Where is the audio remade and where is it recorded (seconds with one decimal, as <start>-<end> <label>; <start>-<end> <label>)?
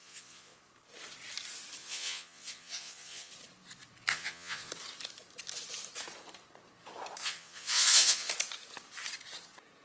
0.0-0.6 remade; 0.6-1.8 recorded; 1.8-3.3 remade; 3.3-4.1 recorded; 4.1-4.7 remade; 4.7-7.2 recorded; 7.2-8.3 remade; 8.3-9.8 recorded